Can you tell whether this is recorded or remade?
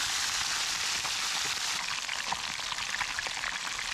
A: recorded